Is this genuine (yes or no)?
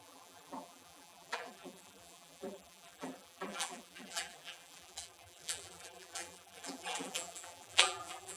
no